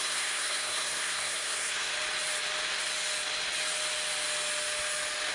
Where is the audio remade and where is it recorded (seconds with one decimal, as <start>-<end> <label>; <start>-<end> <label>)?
0.0-1.9 remade; 1.9-5.3 recorded